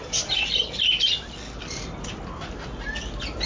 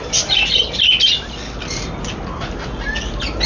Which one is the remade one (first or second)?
first